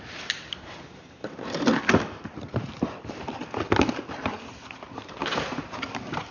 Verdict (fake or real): fake